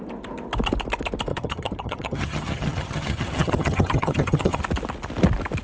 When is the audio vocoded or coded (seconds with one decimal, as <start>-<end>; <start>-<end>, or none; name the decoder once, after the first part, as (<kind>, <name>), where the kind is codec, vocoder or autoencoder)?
1.3-4.6 (vocoder, HiFi-GAN)